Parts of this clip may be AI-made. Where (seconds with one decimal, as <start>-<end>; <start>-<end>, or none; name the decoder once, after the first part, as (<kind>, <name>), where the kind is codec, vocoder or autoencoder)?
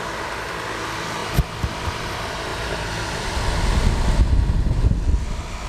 none